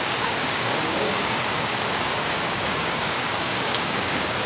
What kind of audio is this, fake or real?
fake